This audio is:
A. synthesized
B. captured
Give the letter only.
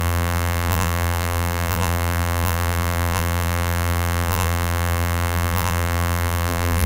A